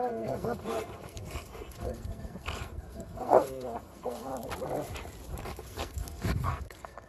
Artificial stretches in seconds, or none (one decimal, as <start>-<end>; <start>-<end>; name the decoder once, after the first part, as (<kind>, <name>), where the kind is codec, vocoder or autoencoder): 0.0-4.3 (codec, SNAC); 5.4-7.1